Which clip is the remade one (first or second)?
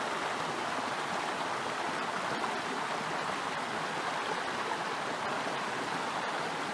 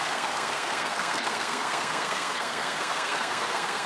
second